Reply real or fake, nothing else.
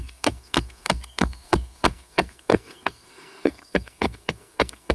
fake